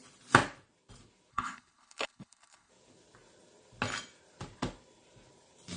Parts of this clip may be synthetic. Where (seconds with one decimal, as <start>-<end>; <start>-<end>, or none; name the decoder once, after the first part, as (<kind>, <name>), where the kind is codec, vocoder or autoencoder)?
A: 1.3-2.7 (codec, HILCodec)

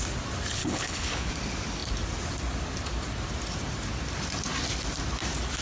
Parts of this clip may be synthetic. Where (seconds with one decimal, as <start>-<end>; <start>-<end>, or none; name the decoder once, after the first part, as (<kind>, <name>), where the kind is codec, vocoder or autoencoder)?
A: 0.6-1.3 (codec, HILCodec)

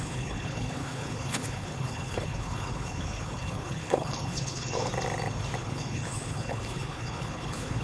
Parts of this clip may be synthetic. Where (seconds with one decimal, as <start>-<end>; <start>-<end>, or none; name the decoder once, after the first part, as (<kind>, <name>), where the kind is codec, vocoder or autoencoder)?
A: 0.0-4.9 (codec, HILCodec); 5.6-7.8

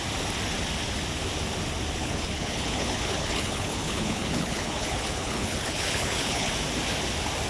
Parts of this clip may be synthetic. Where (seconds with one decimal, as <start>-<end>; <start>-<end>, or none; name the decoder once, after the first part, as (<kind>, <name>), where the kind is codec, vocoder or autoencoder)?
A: 2.0-6.5 (codec, HILCodec)

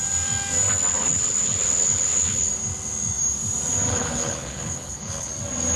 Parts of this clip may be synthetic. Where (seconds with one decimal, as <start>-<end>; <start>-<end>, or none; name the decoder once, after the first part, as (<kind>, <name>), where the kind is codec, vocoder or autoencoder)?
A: 0.9-2.5 (codec, HILCodec); 3.9-5.3